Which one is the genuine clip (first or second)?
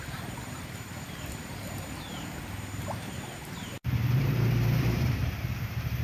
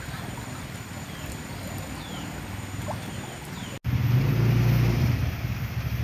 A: second